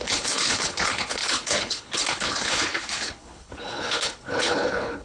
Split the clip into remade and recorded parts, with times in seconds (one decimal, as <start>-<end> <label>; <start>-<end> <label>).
0.0-5.0 remade